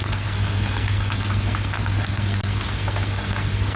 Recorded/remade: remade